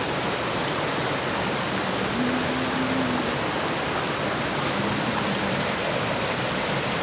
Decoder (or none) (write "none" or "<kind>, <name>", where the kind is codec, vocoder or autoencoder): none